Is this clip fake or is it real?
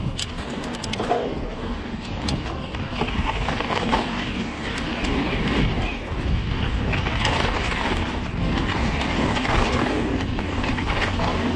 fake